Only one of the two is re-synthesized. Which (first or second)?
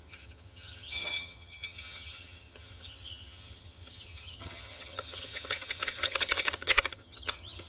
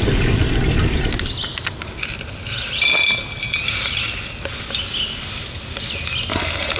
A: first